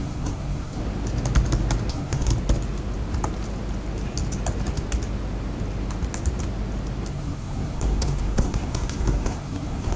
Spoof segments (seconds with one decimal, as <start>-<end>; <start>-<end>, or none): 0.0-0.8; 1.9-2.3; 7.1-10.0